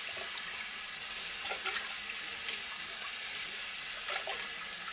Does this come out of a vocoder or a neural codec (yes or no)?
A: no